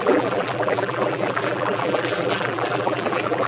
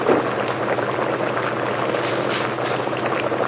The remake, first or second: first